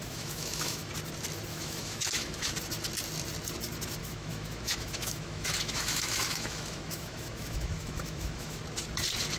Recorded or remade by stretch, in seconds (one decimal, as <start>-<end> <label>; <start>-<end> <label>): 0.0-0.9 remade; 0.9-1.5 recorded; 1.5-2.5 remade; 2.5-4.0 recorded; 4.0-8.6 remade; 8.6-9.4 recorded